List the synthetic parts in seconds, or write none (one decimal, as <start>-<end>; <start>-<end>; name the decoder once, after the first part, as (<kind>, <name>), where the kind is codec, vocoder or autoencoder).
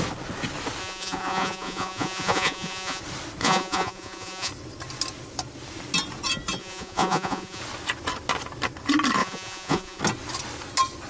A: 0.8-3.0 (vocoder, Vocos); 3.4-4.5; 6.6-7.6; 9.2-10.0